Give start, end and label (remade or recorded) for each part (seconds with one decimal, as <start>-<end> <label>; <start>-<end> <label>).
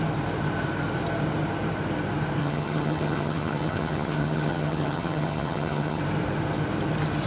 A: 0.0-2.4 recorded; 2.4-6.0 remade; 6.0-7.3 recorded